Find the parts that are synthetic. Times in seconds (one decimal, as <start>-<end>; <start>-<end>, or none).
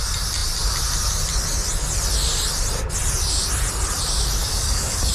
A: 4.4-5.1